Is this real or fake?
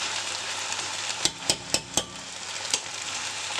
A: fake